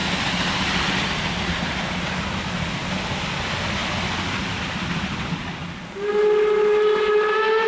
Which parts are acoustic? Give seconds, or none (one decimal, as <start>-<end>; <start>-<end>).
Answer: 0.0-7.7